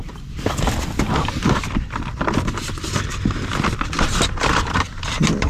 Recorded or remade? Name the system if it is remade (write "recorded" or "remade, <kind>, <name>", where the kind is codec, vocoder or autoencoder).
remade, vocoder, BigVGAN v2